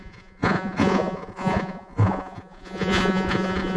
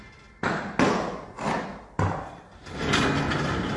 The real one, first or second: second